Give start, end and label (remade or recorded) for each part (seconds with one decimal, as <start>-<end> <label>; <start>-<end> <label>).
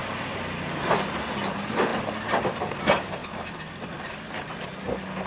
0.0-5.3 recorded